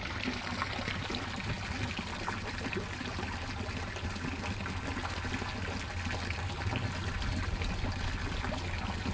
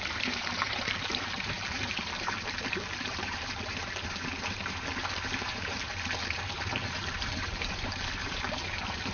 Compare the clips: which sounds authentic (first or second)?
first